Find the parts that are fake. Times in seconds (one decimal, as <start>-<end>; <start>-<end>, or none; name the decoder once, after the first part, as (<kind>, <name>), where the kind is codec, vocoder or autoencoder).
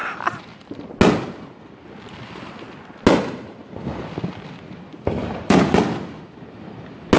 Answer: 0.0-0.9 (vocoder, BigVGAN v2); 3.6-4.2; 5.2-6.3